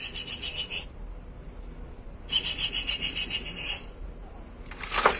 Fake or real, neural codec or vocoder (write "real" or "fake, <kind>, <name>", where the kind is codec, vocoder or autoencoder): real